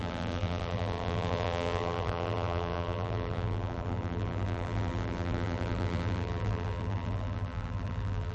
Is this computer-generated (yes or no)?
yes